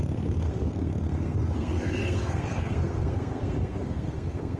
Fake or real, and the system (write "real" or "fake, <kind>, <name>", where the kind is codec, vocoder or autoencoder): fake, codec, SNAC